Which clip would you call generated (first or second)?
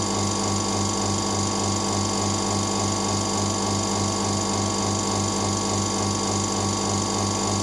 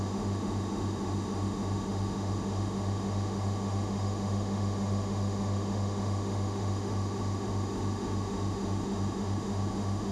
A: second